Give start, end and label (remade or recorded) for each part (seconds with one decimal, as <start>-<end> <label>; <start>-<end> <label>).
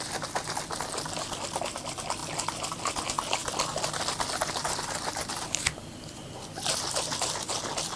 0.0-8.0 recorded